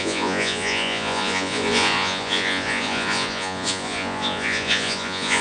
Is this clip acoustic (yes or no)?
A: no